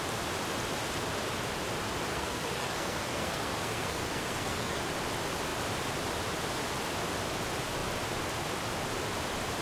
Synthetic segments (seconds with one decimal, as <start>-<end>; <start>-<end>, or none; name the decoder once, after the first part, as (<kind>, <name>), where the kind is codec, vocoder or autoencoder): 2.1-4.8 (codec, SNAC)